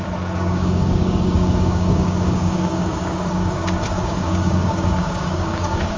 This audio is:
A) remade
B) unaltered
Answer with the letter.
A